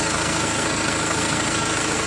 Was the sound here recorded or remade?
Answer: remade